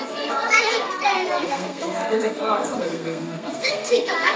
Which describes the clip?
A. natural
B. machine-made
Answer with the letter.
B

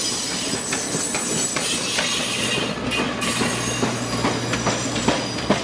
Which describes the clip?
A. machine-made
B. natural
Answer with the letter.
B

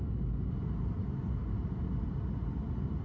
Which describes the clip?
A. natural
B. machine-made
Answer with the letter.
A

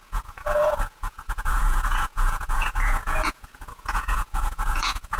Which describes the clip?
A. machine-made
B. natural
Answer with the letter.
A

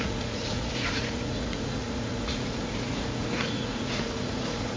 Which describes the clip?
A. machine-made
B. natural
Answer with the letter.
A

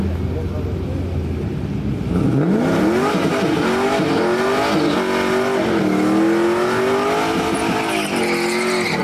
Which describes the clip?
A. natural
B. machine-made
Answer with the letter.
A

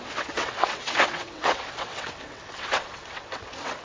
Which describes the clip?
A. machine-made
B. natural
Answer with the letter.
A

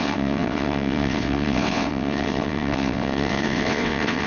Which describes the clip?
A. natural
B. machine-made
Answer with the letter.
B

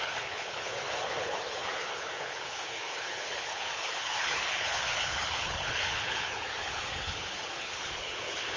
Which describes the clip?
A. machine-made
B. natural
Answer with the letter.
A